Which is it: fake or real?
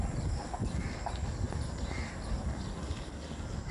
real